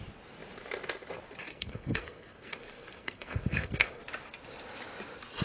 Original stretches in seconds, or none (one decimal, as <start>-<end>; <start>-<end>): 0.0-1.5; 4.0-5.4